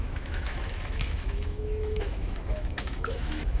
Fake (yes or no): yes